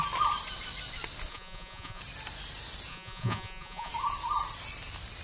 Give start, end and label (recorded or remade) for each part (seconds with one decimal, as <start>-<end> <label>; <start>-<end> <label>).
0.0-1.3 recorded; 1.3-2.0 remade; 2.0-2.9 recorded; 2.9-3.9 remade; 3.9-5.2 recorded